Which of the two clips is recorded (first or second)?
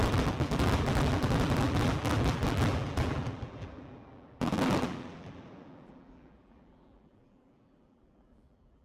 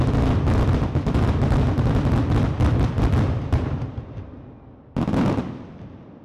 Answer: second